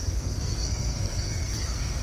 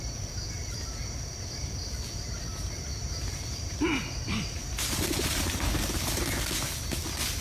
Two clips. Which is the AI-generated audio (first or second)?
first